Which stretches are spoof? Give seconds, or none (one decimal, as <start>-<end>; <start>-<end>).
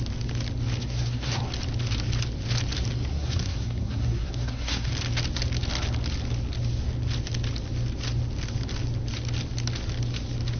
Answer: 0.8-1.4; 3.1-4.9